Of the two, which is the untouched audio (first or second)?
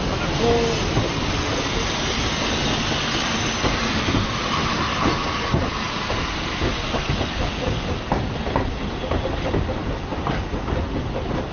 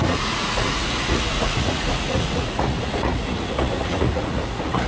first